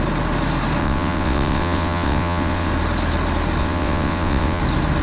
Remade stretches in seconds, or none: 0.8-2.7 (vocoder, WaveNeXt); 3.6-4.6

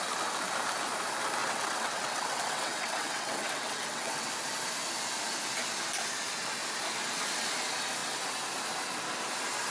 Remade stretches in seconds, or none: 1.4-4.3 (vocoder, WaveNeXt)

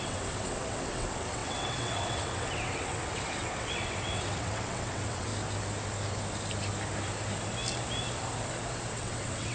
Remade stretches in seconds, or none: 0.0-5.3 (vocoder, WaveNeXt); 8.9-9.5